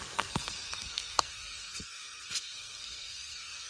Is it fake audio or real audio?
fake